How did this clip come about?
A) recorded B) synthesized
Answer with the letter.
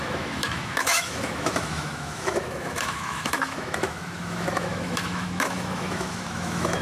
B